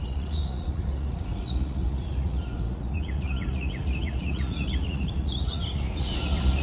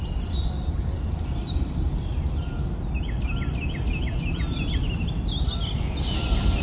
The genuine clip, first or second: second